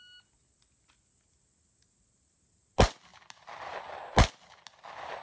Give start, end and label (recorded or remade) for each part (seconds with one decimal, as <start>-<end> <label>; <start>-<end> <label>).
0.0-5.2 recorded